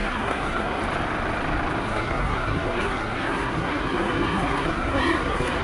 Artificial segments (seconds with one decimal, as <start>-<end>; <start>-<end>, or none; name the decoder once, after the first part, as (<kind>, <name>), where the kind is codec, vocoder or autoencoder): 0.0-0.8 (codec, SNAC); 1.8-5.6

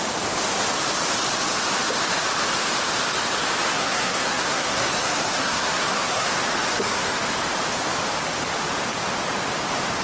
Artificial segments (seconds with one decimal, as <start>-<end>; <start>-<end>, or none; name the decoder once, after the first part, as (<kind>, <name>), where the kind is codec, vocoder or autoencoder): 3.7-6.3 (codec, SNAC); 6.7-7.2

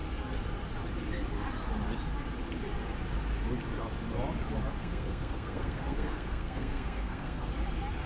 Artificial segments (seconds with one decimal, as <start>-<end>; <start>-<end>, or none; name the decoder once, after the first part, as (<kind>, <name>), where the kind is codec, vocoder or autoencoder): 4.8-7.5 (codec, SNAC)

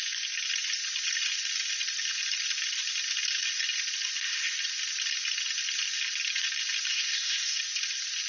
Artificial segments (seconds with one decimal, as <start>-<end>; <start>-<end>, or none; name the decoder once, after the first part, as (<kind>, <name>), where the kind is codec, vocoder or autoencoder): 6.9-7.6 (codec, SNAC)

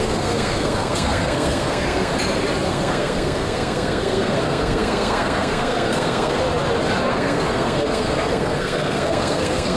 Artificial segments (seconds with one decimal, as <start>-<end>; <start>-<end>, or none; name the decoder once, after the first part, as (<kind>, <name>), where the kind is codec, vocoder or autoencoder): 0.0-2.1 (codec, SNAC); 2.7-6.4; 7.1-9.8